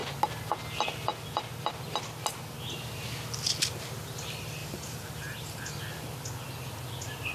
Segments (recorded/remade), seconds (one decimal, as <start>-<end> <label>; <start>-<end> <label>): 0.0-4.6 recorded; 4.6-6.0 remade; 6.0-7.3 recorded